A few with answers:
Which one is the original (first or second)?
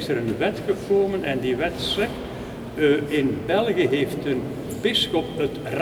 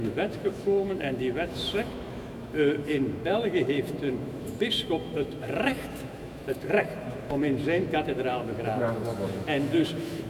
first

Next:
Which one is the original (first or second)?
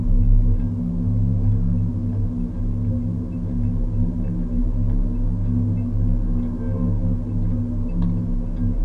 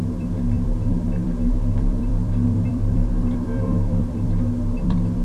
first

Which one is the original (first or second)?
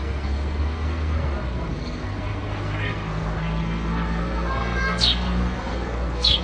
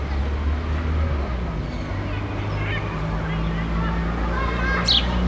second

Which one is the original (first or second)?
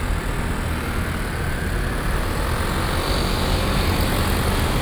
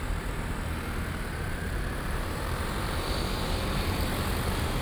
first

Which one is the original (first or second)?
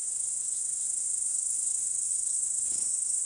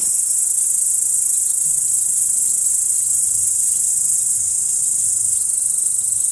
second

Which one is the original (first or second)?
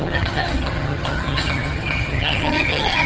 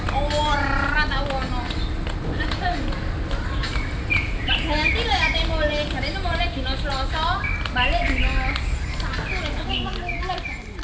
second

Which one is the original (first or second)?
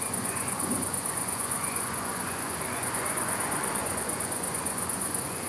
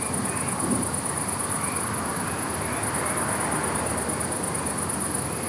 second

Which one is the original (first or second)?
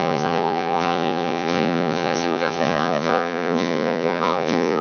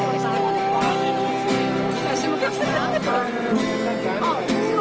second